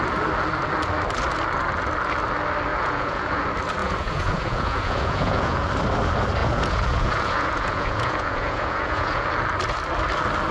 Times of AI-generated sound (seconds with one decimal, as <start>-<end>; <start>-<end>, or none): 2.7-3.4; 3.8-5.7; 6.4-9.3